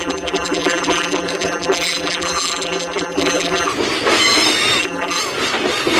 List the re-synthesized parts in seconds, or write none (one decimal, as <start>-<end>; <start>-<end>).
0.0-3.7; 4.8-5.2